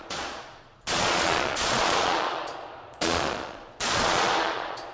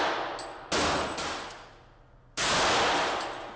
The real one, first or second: second